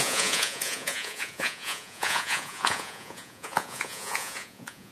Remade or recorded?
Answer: remade